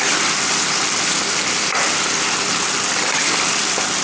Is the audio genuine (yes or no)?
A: yes